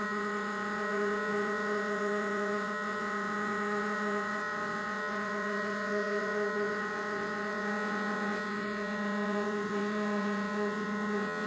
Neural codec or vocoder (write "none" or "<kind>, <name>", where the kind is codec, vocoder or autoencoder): vocoder, WaveNeXt